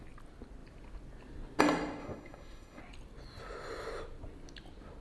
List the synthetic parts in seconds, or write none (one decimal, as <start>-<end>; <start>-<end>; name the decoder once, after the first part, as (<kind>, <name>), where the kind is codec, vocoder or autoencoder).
2.0-2.8 (autoencoder, DAC-VAE)